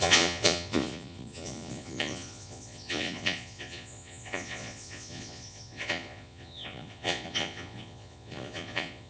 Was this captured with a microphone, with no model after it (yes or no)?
no